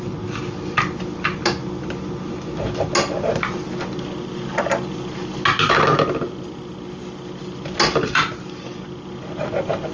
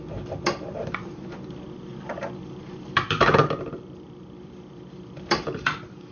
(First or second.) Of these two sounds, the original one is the first